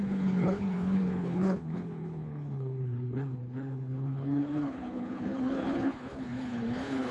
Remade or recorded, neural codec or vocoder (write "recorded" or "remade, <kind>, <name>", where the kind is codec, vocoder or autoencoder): remade, codec, HILCodec